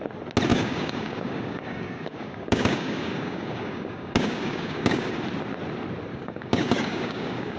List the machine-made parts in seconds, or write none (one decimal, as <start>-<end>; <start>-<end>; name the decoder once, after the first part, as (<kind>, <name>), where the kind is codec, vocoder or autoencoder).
0.5-5.1 (codec, DAC); 6.1-7.6